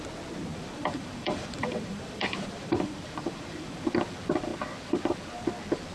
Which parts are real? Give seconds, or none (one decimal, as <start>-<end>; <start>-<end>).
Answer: 0.0-0.5; 3.9-5.9